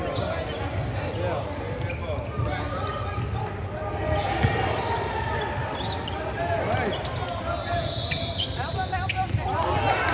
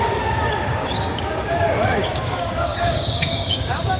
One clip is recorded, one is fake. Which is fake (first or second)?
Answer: second